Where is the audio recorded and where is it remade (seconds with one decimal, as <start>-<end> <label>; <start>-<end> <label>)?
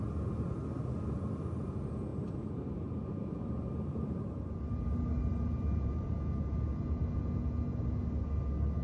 0.0-2.1 recorded; 2.1-6.1 remade; 6.1-8.8 recorded